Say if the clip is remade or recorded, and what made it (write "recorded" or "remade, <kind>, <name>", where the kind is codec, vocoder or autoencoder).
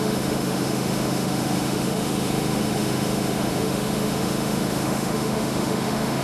remade, autoencoder, DAC-VAE